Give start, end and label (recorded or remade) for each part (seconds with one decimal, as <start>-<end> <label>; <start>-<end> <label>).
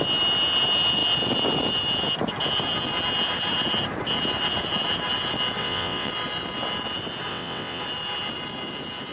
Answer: 0.0-5.6 recorded; 5.6-6.1 remade; 6.1-7.3 recorded; 7.3-7.8 remade; 7.8-9.1 recorded